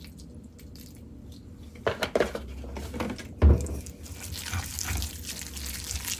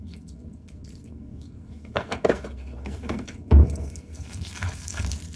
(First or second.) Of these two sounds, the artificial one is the second